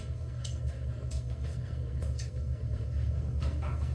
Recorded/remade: remade